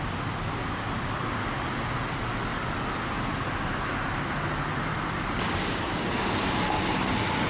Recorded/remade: recorded